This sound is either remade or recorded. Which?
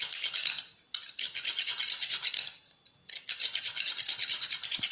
recorded